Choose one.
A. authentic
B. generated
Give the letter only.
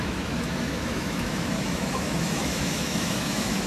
B